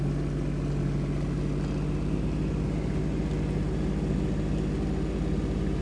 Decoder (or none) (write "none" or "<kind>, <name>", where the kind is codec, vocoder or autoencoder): none